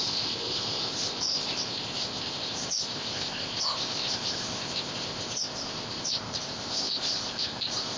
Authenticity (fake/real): fake